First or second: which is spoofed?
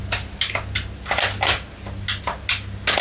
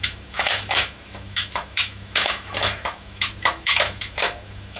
second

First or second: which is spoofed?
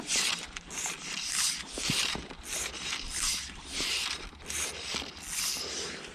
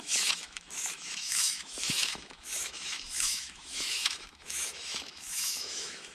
second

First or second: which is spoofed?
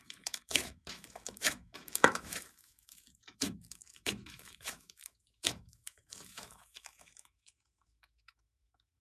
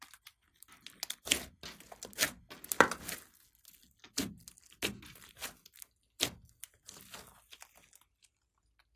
first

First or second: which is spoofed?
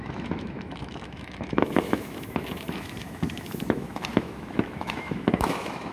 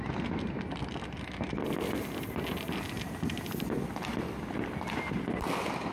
first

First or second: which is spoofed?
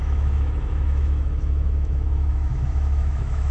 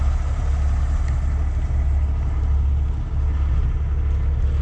first